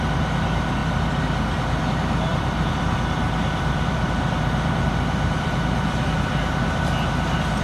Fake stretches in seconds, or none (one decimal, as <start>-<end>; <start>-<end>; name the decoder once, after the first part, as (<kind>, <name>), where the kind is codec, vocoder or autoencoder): 2.3-6.9 (vocoder, BigVGAN v2)